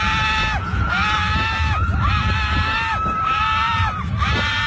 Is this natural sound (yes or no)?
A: yes